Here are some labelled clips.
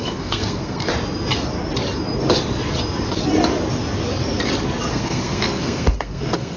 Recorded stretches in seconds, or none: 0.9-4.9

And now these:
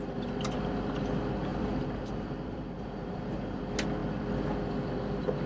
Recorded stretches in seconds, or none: 0.0-1.5; 3.6-5.5

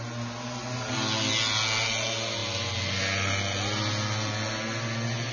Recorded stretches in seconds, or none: 0.0-5.3

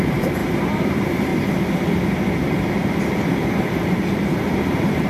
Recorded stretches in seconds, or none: 0.4-0.9; 1.3-2.4

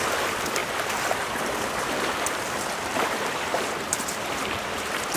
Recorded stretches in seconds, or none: 0.0-0.6; 3.7-5.2